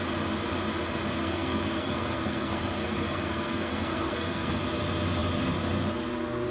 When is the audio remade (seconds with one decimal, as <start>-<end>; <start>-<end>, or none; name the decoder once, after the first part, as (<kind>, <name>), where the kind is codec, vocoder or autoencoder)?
1.2-4.6 (codec, SNAC)